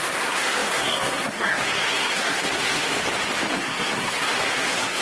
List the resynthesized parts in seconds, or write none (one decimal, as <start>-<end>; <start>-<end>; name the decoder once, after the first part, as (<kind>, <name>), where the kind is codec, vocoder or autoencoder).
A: 0.0-3.0 (codec, SNAC); 3.5-5.0